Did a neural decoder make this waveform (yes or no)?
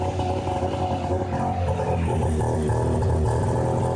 no